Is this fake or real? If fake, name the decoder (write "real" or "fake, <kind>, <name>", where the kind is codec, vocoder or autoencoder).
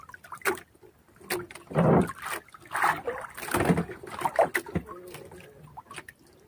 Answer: real